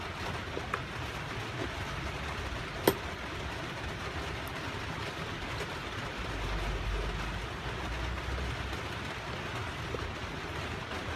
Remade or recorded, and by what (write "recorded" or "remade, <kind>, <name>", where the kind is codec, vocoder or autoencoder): recorded